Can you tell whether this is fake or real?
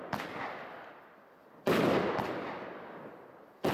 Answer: real